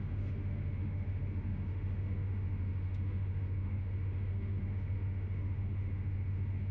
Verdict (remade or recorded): remade